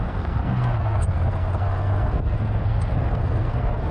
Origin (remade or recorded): remade